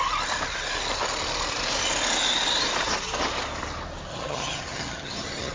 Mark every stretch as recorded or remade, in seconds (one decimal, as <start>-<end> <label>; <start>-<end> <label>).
0.0-4.1 recorded; 4.1-5.5 remade